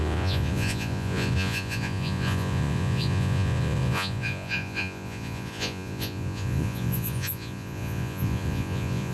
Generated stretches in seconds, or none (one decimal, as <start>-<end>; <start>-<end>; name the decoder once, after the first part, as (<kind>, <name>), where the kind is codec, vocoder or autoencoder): 0.0-9.1 (vocoder, Vocos)